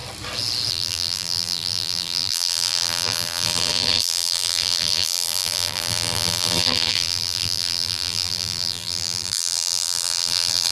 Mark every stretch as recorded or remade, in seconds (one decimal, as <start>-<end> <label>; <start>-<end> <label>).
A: 0.0-0.7 recorded; 0.7-10.7 remade